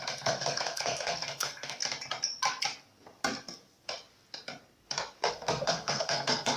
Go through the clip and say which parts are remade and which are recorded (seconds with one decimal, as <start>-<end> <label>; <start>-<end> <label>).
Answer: 0.0-1.8 remade; 1.8-5.3 recorded; 5.3-6.6 remade